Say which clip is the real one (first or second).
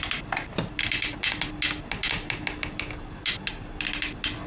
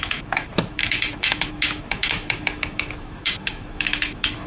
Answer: first